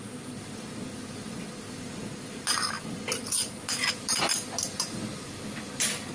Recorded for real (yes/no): yes